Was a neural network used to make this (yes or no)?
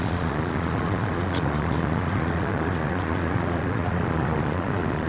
yes